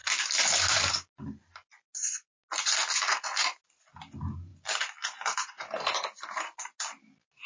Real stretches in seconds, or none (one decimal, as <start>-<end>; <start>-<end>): 0.0-7.5